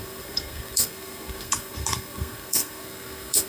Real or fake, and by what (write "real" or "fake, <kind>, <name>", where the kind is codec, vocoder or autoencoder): fake, codec, SNAC